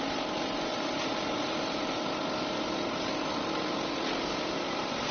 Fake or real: real